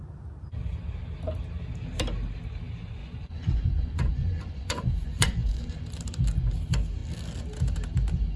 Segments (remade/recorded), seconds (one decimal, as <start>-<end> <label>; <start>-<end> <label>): 0.0-3.0 recorded; 3.0-5.8 remade; 5.8-8.4 recorded